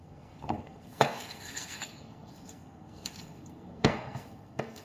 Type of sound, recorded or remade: remade